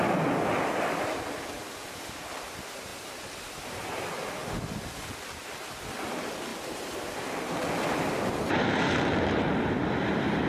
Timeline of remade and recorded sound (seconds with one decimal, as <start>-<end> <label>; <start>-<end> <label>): 0.0-10.5 recorded